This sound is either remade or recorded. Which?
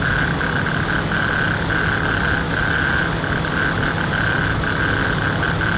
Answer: recorded